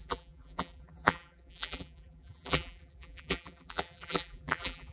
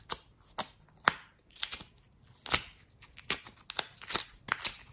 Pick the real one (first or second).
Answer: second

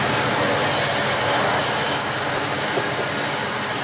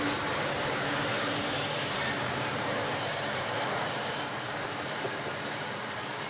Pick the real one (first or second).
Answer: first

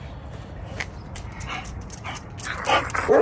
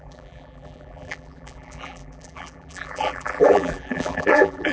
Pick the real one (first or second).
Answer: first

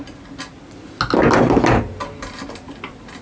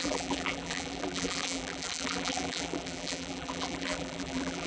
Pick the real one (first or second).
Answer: first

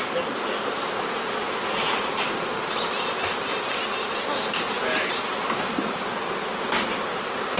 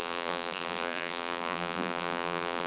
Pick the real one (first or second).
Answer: first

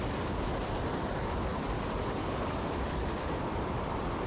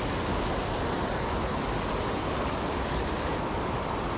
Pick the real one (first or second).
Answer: second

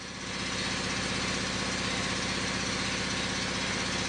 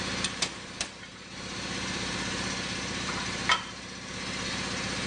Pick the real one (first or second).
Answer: first